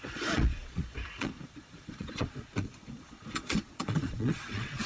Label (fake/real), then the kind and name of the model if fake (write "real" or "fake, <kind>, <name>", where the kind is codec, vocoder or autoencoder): fake, vocoder, Vocos